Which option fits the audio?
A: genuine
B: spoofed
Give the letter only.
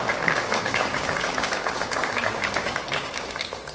B